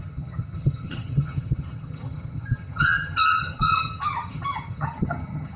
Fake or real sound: fake